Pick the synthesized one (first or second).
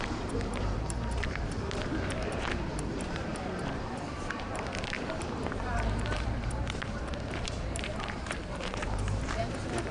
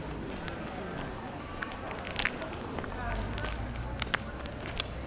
first